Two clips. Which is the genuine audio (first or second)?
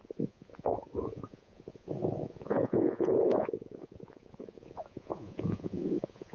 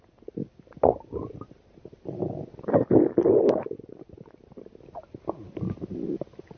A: second